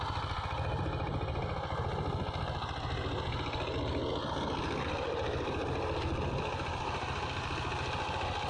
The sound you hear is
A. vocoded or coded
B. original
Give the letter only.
B